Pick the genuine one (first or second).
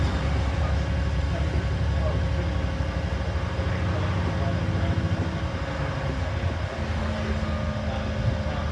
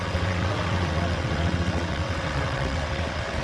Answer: first